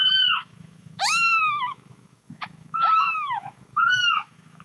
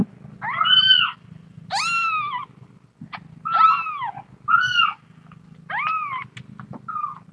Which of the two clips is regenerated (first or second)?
first